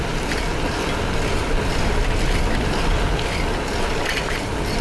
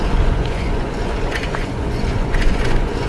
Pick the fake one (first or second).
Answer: second